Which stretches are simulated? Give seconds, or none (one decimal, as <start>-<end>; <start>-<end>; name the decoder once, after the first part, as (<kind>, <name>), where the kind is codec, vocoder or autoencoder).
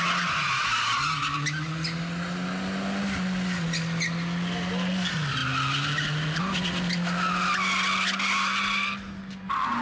none